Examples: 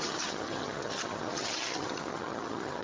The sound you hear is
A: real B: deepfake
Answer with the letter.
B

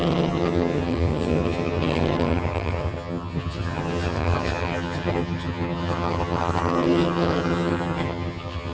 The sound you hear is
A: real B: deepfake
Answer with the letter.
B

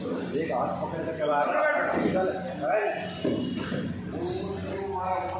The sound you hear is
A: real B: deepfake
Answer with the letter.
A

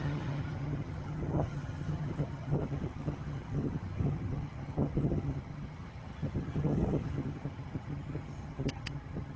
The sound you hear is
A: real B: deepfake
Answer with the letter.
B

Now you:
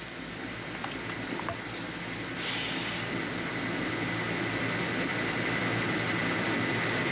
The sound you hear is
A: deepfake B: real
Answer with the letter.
B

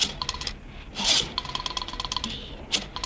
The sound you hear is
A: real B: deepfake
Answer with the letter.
A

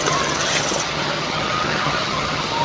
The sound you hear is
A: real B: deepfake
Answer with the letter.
B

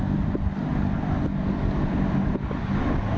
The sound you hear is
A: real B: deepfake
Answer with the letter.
A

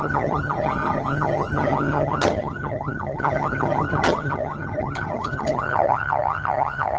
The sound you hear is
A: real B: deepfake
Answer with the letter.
B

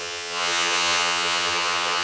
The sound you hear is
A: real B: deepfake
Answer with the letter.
B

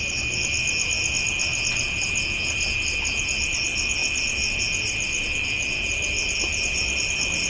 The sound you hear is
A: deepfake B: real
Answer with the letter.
B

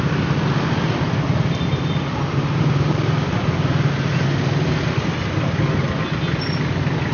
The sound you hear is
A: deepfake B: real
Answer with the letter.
B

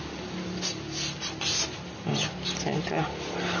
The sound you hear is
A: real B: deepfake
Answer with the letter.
A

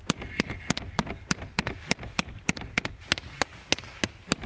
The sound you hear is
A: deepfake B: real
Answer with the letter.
B